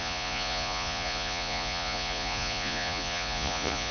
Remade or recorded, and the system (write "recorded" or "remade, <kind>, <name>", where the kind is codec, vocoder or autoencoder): remade, vocoder, Vocos